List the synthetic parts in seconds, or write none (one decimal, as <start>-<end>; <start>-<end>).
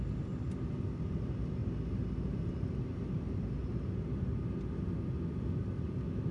0.0-1.6; 5.4-6.3